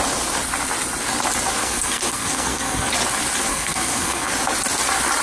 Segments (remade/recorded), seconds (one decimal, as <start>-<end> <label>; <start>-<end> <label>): 0.0-1.6 recorded; 1.6-2.9 remade; 2.9-3.5 recorded; 3.5-4.3 remade; 4.3-5.2 recorded